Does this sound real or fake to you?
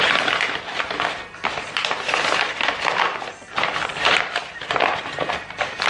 real